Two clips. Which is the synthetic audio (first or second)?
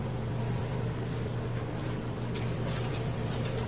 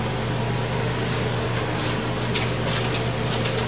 first